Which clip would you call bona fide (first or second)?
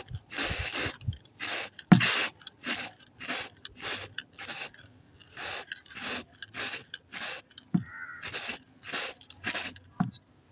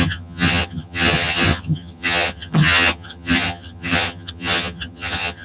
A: first